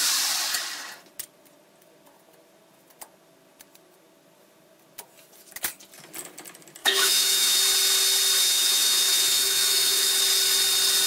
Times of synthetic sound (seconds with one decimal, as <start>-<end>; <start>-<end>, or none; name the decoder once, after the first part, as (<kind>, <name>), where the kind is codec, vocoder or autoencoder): 6.8-7.6 (autoencoder, DAC-VAE); 8.4-10.1